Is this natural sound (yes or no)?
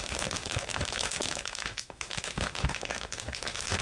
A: no